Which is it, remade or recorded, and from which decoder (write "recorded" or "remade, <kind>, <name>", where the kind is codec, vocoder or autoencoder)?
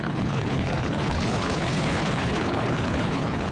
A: remade, codec, HILCodec